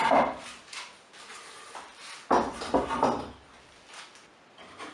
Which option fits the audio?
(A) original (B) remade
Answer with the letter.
A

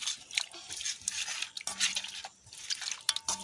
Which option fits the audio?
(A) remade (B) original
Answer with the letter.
B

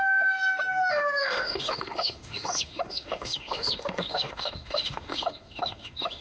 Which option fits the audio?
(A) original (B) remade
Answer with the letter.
B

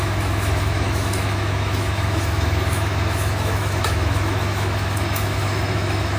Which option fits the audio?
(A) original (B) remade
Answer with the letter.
B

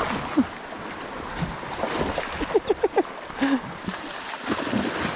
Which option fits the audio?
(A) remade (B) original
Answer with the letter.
B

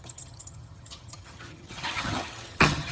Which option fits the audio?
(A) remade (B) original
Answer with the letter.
A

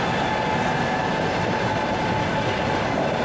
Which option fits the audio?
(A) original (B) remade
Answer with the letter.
A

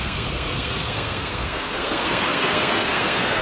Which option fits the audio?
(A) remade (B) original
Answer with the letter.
A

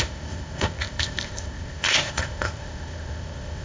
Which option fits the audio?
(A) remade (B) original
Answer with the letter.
A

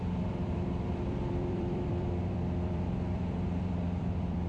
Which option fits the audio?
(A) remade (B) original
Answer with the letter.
A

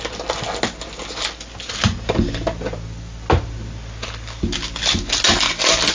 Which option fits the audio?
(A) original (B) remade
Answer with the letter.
A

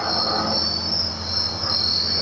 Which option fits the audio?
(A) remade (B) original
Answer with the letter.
B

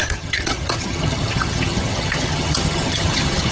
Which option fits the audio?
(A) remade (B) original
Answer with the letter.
A